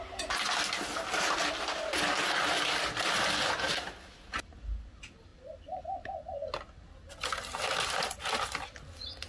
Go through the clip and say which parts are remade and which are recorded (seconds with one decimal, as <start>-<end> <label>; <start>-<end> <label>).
0.0-5.3 recorded; 5.3-5.8 remade; 5.8-9.3 recorded